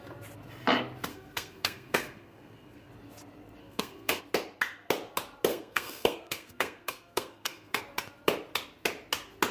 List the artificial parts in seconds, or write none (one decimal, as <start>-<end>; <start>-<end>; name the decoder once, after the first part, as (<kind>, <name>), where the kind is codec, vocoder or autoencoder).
1.1-2.9 (codec, SNAC); 3.6-4.2; 5.5-7.8